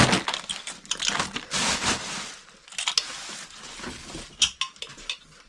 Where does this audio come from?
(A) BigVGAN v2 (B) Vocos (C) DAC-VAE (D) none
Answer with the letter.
D